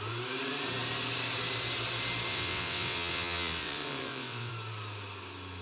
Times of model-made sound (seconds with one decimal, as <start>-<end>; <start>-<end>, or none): 2.3-4.5